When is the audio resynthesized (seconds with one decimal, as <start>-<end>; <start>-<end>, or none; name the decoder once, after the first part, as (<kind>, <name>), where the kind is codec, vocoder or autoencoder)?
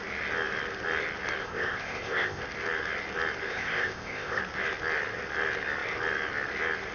1.4-2.4 (codec, ZipCodec); 3.5-4.4